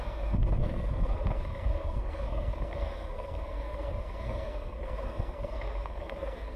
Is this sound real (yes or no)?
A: no